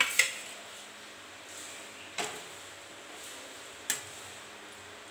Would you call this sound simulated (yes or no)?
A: no